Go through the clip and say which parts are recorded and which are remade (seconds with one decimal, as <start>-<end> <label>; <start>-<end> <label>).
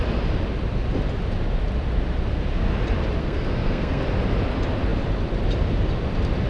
0.0-3.2 recorded; 3.2-4.0 remade; 4.0-6.5 recorded